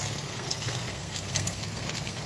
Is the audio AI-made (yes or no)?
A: yes